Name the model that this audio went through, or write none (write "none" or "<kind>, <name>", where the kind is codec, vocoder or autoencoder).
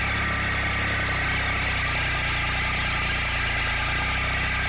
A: none